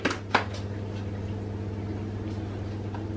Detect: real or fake real